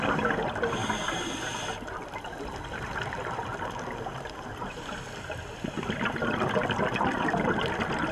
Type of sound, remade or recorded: recorded